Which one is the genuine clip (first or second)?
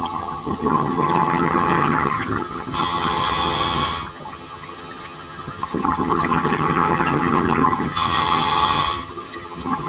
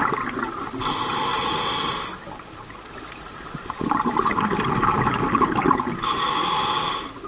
second